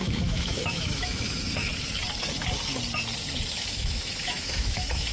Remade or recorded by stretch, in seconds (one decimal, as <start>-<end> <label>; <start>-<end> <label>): 0.0-1.7 remade; 1.7-3.5 recorded; 3.5-5.1 remade